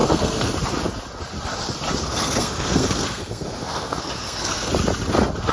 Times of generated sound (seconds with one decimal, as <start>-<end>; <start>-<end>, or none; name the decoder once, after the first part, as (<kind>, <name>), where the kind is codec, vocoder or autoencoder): 0.0-0.5 (codec, SNAC); 2.0-4.7